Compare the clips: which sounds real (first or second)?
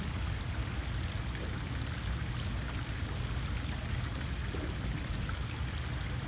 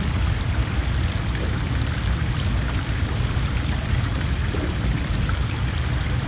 first